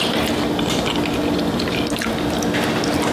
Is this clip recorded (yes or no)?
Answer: yes